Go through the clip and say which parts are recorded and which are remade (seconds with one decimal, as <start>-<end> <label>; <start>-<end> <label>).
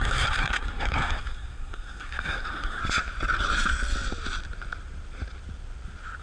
0.0-2.8 remade; 2.8-6.2 recorded